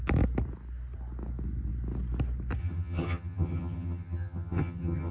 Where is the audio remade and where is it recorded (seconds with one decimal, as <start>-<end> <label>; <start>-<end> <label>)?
0.0-2.6 recorded; 2.6-5.1 remade